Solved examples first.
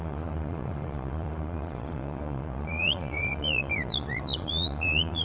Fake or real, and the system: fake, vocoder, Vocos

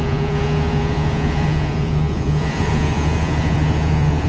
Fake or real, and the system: fake, vocoder, Vocos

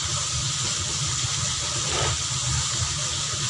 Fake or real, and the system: real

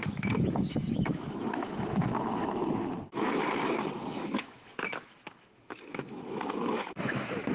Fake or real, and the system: fake, autoencoder, DAC-VAE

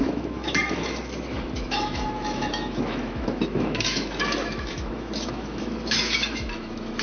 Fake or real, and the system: fake, autoencoder, DAC-VAE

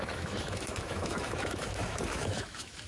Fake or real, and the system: fake, autoencoder, DAC-VAE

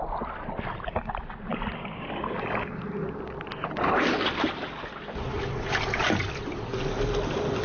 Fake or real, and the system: real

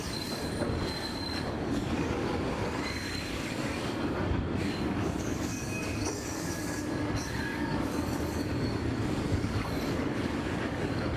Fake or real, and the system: fake, codec, DAC